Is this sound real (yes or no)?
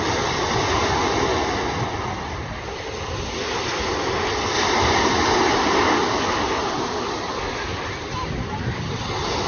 yes